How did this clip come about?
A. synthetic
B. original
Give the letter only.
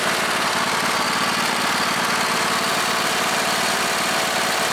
B